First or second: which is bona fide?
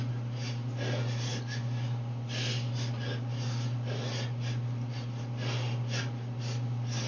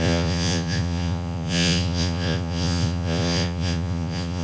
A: first